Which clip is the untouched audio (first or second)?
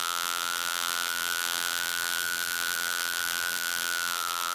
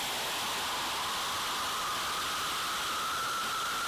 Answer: second